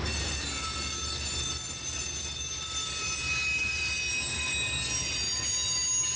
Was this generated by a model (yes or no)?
no